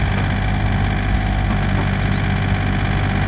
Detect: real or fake real